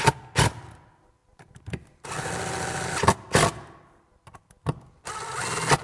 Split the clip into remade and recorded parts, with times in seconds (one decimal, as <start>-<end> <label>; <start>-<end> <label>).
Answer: 0.0-1.2 recorded; 1.2-2.9 remade; 2.9-5.8 recorded